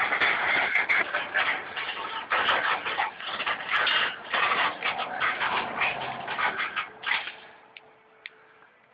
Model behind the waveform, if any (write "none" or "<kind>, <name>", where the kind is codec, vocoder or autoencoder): none